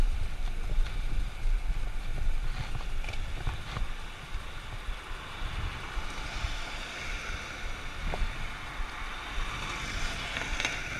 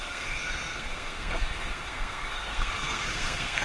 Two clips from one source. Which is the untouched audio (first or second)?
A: first